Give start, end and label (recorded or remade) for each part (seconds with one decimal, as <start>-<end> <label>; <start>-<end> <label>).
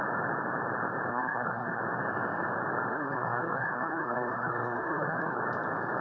0.0-1.1 recorded; 1.1-1.8 remade; 1.8-2.9 recorded; 2.9-5.4 remade; 5.4-6.0 recorded